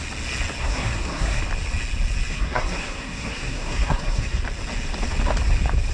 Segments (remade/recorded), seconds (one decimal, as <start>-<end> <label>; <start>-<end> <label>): 0.0-0.6 recorded; 0.6-1.4 remade; 1.4-2.3 recorded; 2.3-4.4 remade; 4.4-5.9 recorded